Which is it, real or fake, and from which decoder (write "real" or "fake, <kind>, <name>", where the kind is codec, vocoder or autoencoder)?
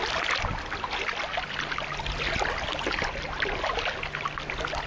real